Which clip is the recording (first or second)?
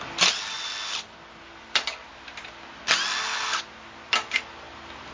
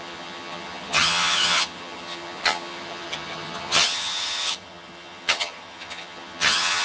first